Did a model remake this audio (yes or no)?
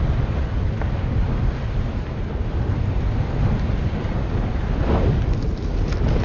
no